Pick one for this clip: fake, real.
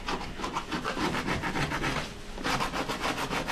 real